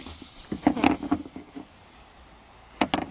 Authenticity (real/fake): real